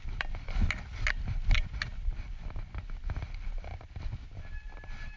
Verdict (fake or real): real